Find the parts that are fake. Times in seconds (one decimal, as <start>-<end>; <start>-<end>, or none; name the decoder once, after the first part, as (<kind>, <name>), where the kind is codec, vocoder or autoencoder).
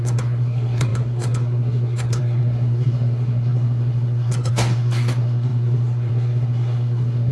0.0-7.3 (codec, SNAC)